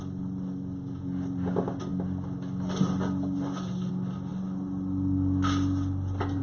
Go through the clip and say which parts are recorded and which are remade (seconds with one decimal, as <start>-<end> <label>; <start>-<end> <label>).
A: 0.0-6.4 recorded